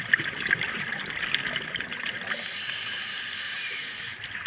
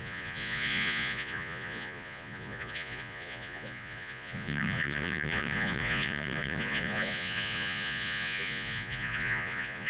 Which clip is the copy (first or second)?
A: second